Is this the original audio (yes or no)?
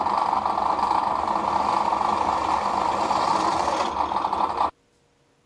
yes